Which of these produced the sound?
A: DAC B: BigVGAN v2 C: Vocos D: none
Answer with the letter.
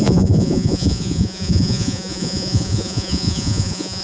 C